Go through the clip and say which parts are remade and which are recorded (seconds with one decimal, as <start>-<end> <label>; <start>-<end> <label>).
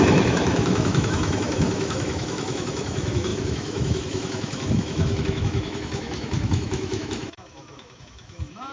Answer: 0.0-8.7 remade